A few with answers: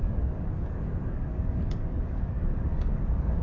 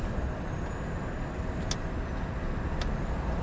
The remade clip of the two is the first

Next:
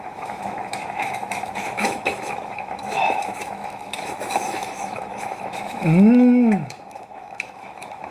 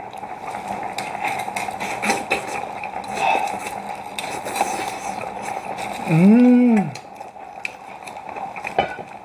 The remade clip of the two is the first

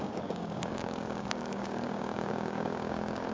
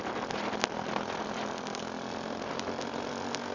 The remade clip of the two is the first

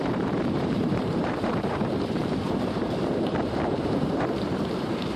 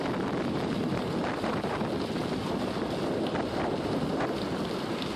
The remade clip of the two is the first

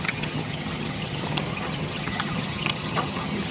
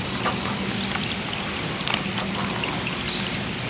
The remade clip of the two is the first